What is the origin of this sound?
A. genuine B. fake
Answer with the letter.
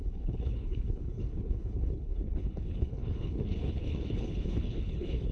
B